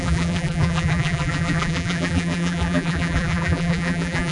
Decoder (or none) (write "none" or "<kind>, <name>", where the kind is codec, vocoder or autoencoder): vocoder, BigVGAN v2